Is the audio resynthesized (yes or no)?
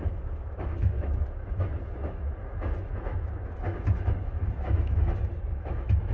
yes